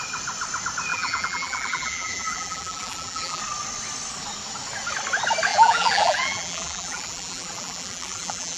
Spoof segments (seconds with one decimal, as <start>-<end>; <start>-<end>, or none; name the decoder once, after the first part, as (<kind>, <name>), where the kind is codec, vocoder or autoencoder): 0.9-3.4 (vocoder, BigVGAN v2); 5.5-8.6